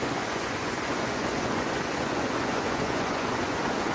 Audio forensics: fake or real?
fake